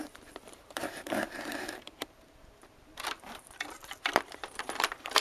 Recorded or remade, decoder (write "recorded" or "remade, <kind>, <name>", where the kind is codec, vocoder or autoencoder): remade, vocoder, BigVGAN v2